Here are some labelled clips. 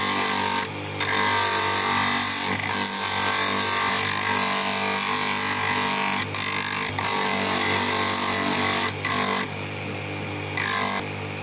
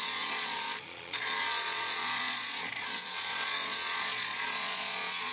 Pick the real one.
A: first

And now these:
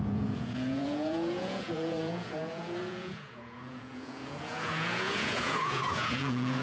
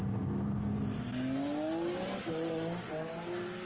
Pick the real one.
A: second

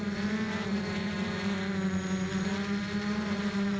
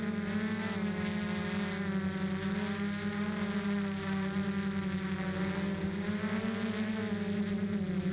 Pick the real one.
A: second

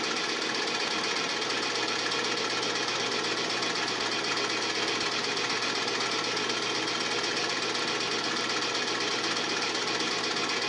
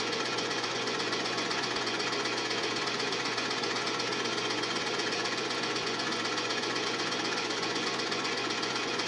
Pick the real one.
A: first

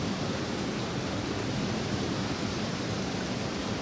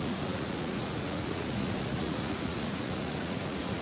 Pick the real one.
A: first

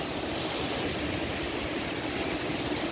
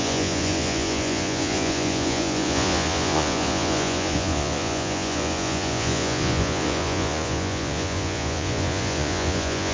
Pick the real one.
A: first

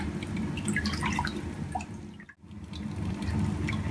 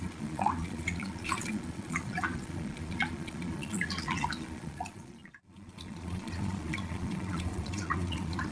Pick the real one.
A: first